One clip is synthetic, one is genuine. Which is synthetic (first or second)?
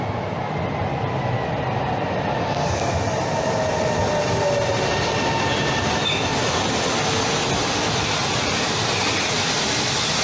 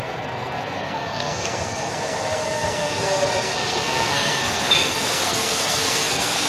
second